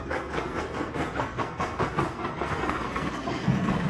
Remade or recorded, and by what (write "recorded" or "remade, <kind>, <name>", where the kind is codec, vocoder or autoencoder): remade, codec, SNAC